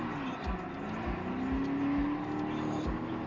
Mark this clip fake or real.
real